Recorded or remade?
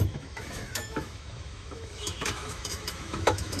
remade